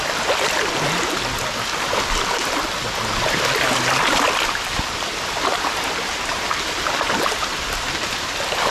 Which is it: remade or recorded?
recorded